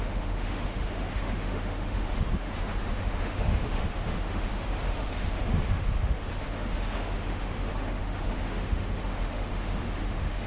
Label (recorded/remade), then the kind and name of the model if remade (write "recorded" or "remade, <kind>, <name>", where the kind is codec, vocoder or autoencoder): remade, autoencoder, DAC-VAE